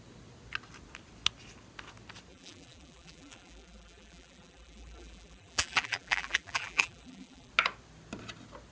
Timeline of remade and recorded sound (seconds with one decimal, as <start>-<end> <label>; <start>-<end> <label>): 0.0-2.3 recorded; 2.3-7.5 remade; 7.5-8.7 recorded